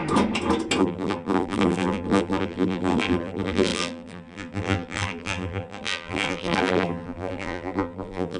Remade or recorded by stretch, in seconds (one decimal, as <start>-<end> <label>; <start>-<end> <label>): 0.0-0.8 recorded; 0.8-8.4 remade

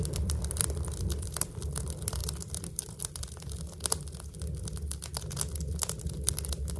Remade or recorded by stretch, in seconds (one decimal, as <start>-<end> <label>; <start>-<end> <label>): 0.0-2.2 remade; 2.2-6.0 recorded; 6.0-6.8 remade

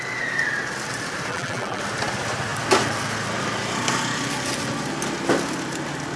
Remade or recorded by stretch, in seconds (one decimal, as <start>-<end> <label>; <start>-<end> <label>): 0.0-1.3 recorded; 1.3-1.8 remade; 1.8-6.2 recorded

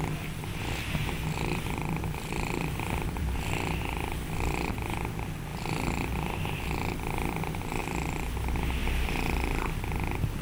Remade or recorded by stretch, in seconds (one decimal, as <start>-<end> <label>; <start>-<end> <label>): 0.0-1.0 recorded; 1.0-4.7 remade; 4.7-5.5 recorded; 5.5-6.4 remade; 6.4-7.8 recorded; 7.8-8.3 remade; 8.3-8.8 recorded; 8.8-9.7 remade; 9.7-10.4 recorded